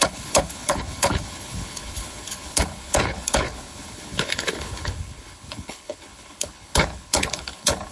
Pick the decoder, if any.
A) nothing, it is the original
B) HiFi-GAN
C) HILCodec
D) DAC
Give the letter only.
C